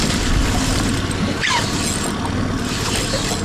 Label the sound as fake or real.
real